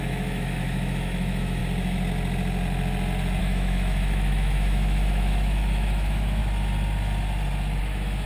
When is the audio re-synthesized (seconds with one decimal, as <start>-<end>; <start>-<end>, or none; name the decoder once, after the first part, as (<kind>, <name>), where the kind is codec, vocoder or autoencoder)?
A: 0.0-1.6 (autoencoder, DAC-VAE); 3.4-6.4; 7.8-8.3